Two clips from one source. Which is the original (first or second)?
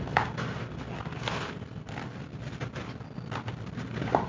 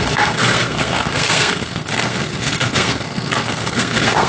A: first